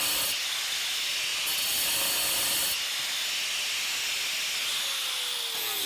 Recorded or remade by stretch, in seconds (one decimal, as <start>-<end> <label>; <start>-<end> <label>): 0.0-5.9 recorded